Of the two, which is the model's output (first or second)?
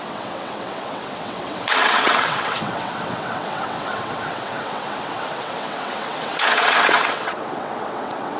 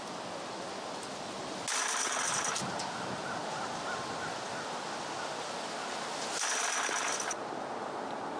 first